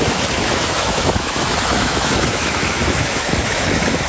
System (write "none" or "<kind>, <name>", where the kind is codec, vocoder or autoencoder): autoencoder, DAC-VAE